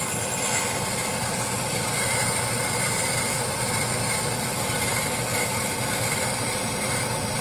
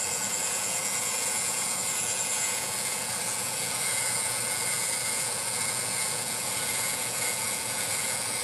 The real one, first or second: first